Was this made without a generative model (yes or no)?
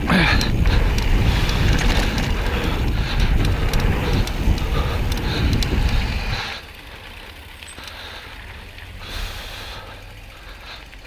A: yes